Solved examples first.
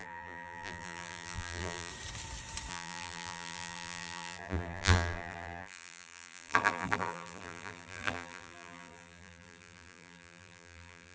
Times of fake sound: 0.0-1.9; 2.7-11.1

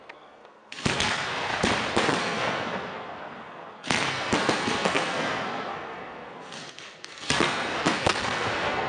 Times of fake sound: 0.0-1.5; 2.2-8.9